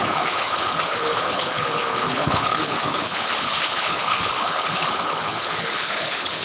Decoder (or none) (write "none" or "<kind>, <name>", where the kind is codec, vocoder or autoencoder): codec, HILCodec